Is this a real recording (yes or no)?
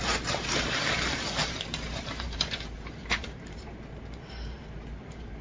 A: no